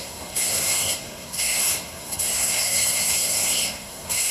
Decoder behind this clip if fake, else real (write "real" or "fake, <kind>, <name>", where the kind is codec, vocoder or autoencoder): fake, codec, SNAC